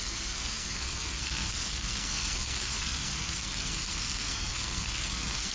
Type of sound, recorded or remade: remade